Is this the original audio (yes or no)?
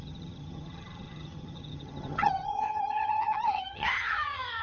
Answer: no